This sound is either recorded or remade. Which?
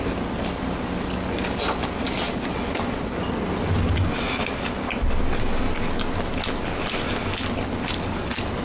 recorded